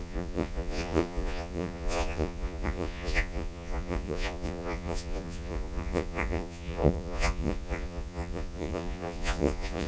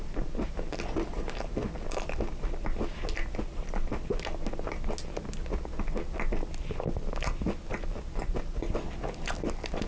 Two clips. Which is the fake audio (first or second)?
first